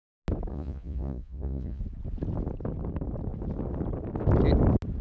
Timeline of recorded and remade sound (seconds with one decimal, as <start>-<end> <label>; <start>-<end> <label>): 0.0-0.5 recorded; 0.5-1.8 remade; 1.8-5.0 recorded